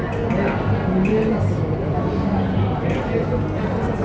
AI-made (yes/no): no